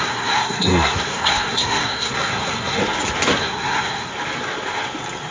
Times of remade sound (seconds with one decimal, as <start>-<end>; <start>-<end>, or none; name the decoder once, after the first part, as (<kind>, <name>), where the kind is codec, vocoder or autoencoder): 0.0-2.8 (codec, SNAC); 3.4-4.1